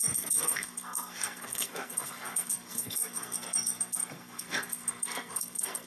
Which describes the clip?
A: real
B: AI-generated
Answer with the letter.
B